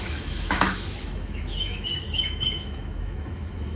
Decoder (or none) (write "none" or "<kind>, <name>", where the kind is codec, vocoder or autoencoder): autoencoder, DAC-VAE